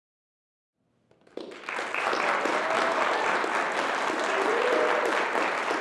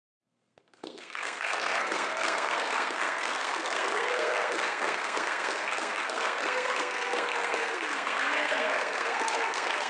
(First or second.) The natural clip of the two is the first